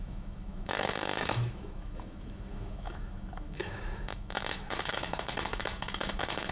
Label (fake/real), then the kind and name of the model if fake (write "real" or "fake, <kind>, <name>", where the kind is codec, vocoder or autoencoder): fake, autoencoder, DAC-VAE